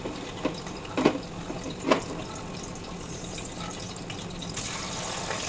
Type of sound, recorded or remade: recorded